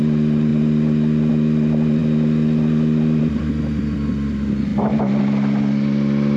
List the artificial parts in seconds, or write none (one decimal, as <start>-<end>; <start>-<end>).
none